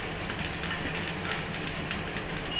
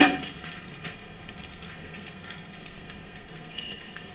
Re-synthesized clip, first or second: second